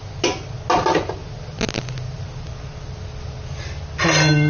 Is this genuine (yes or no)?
yes